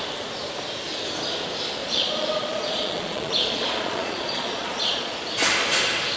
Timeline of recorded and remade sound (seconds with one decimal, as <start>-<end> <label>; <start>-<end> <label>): 0.0-1.8 recorded; 1.8-5.1 remade; 5.1-6.2 recorded